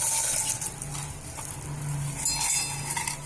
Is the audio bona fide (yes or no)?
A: yes